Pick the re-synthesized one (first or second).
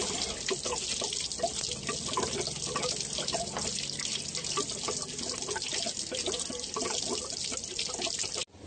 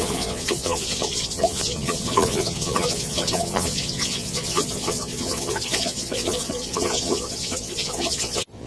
second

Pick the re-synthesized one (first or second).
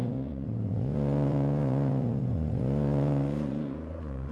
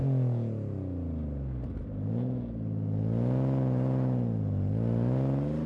first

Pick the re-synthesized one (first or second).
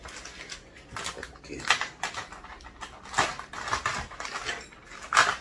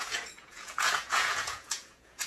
second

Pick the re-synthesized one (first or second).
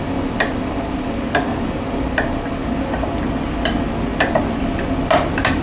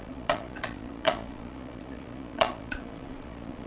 second